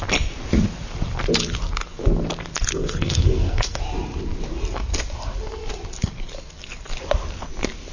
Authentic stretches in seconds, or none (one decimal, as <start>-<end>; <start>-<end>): 0.0-2.7; 3.8-7.9